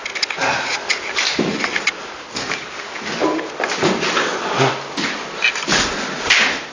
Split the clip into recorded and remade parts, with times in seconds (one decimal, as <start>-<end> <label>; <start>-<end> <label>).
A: 0.0-6.7 recorded